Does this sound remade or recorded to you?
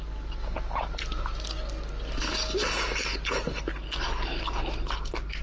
recorded